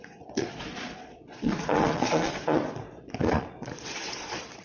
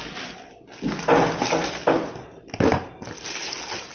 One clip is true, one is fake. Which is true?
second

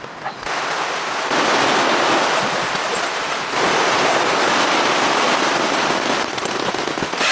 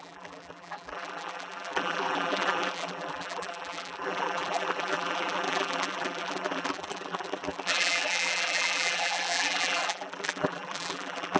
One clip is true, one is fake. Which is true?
first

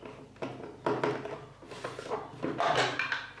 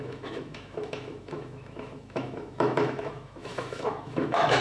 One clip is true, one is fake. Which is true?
first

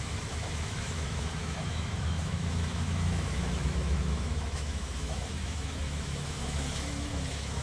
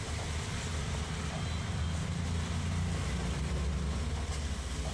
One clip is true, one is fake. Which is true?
second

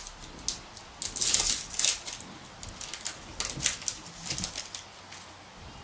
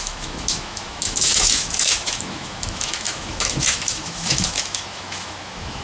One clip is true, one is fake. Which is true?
first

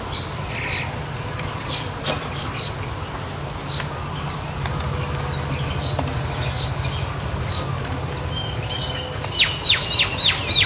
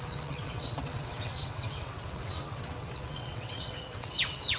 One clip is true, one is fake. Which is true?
first